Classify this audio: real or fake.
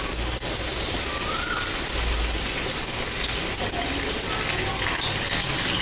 real